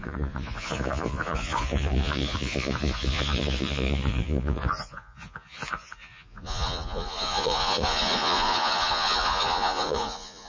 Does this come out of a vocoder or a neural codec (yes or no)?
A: yes